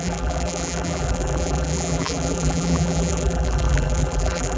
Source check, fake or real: fake